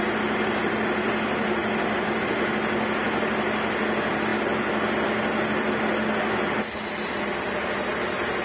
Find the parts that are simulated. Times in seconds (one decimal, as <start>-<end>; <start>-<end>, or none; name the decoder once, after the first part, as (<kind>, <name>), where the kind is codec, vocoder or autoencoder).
1.6-2.2 (vocoder, BigVGAN v2)